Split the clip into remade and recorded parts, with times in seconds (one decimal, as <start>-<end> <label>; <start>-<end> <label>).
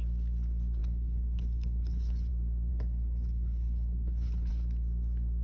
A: 0.0-0.8 recorded; 0.8-2.3 remade; 2.3-2.7 recorded; 2.7-4.5 remade; 4.5-5.4 recorded